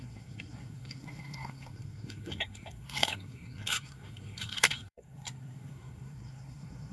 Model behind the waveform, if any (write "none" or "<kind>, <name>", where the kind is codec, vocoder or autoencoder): codec, SNAC